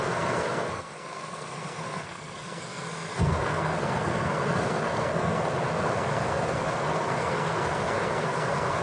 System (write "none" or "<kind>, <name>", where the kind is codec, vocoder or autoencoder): codec, SNAC